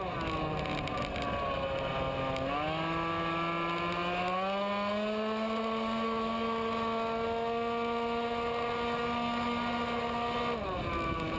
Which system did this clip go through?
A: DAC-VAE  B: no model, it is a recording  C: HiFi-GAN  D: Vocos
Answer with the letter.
B